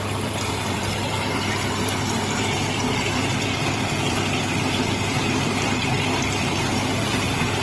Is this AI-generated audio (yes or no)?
yes